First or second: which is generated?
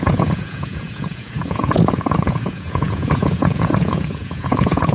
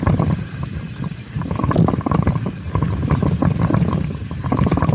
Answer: first